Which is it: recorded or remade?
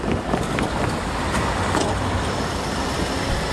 remade